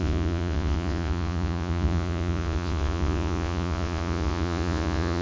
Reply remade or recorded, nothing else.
remade